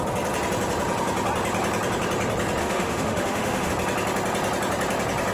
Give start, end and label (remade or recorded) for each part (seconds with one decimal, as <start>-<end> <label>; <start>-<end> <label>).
0.0-2.6 recorded; 2.6-3.7 remade; 3.7-5.3 recorded